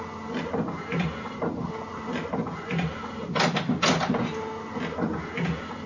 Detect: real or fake real